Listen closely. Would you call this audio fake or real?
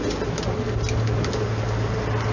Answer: real